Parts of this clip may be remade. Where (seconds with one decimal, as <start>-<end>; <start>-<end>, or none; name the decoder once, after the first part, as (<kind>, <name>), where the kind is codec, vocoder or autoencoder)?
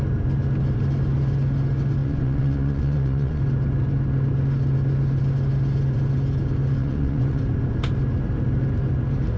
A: 2.0-3.4 (vocoder, Vocos); 6.8-7.4